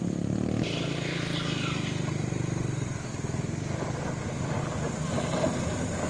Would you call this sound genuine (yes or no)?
yes